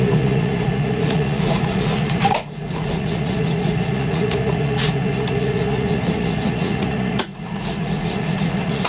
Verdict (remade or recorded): remade